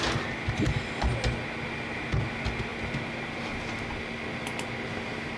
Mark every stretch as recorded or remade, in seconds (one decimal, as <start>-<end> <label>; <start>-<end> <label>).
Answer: 0.0-5.4 recorded